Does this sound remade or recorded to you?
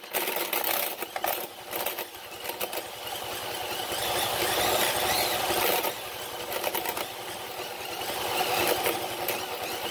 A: recorded